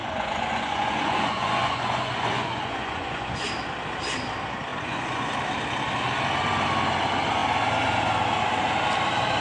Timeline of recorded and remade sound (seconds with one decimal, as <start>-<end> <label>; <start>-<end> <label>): 0.0-3.5 remade; 3.5-4.7 recorded; 4.7-5.3 remade; 5.3-9.4 recorded